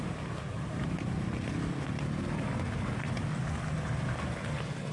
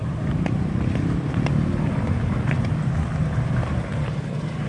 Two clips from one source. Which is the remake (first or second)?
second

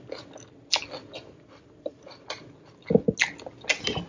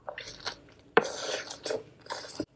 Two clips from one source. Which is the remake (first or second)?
second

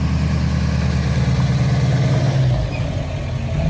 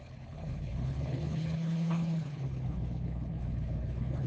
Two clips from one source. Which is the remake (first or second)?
second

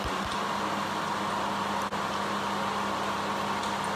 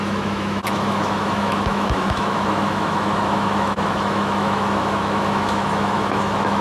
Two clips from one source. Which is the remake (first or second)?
second